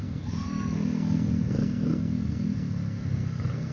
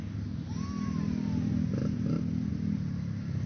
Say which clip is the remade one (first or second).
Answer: first